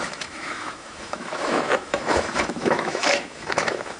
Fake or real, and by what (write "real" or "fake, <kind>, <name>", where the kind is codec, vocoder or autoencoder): fake, autoencoder, DAC-VAE